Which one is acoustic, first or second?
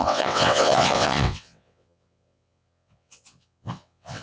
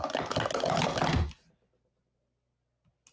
second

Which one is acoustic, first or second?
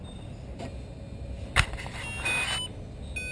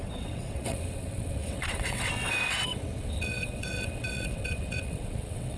first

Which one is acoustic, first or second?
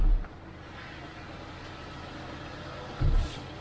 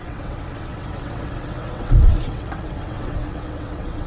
first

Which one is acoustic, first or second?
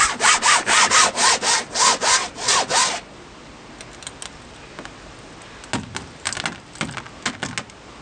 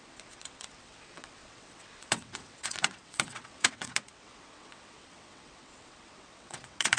first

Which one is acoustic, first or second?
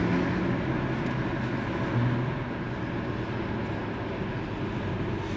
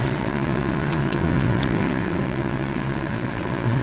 first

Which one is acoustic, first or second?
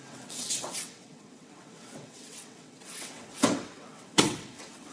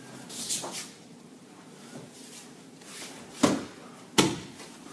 second